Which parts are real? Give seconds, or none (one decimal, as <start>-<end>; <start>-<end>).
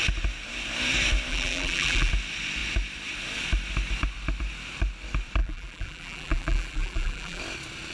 0.0-1.3; 2.1-5.4; 7.4-7.9